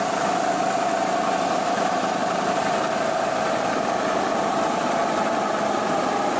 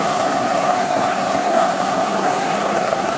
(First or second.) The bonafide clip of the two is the first